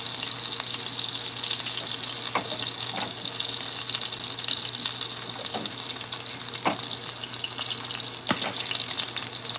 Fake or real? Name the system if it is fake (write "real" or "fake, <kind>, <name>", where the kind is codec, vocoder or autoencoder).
real